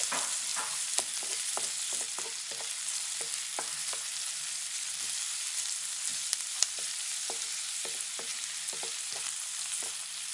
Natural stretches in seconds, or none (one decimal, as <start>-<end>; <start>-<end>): 0.0-0.5; 1.0-3.5; 4.1-6.1; 7.1-8.3; 9.6-10.3